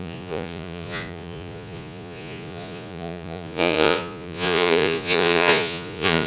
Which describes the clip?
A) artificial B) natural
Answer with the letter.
A